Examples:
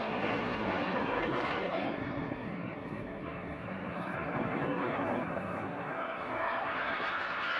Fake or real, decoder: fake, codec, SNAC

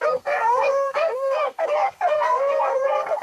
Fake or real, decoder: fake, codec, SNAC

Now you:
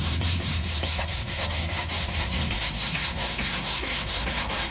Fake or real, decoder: fake, codec, SNAC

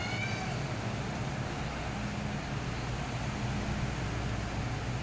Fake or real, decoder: real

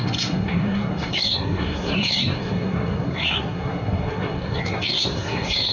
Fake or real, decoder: fake, codec, SNAC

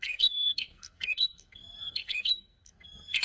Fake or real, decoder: fake, codec, SNAC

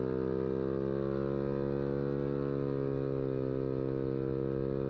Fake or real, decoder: real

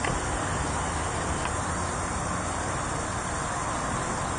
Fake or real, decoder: real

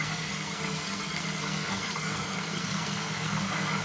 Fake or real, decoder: fake, codec, SNAC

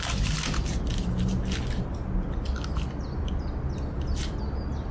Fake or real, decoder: real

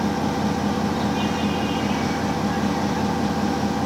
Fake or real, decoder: real